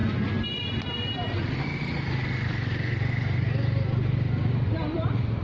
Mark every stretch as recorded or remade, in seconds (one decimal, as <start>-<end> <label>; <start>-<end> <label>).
0.0-5.4 recorded

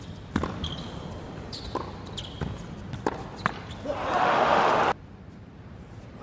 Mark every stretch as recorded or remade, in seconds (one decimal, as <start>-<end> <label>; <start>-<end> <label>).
0.0-4.2 recorded; 4.2-4.7 remade; 4.7-6.2 recorded